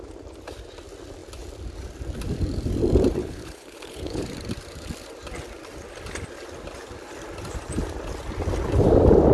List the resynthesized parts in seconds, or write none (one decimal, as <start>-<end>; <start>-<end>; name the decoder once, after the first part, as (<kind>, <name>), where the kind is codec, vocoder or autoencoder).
3.2-4.2 (codec, HILCodec)